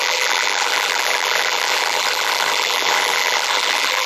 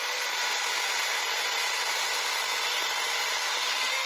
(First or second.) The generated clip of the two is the first